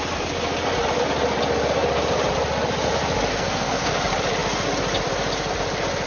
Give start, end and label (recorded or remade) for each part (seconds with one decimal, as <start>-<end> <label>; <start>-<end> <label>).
0.0-3.3 recorded; 3.3-3.9 remade; 3.9-6.1 recorded